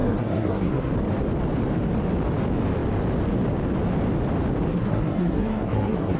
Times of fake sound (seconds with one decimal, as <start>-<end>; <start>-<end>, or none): 0.0-0.9; 4.7-6.2